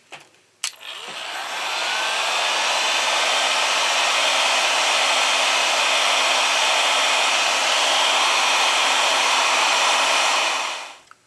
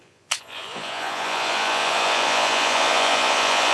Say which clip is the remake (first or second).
second